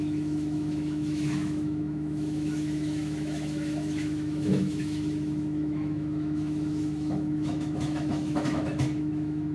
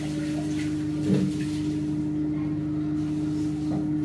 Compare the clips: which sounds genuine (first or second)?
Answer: second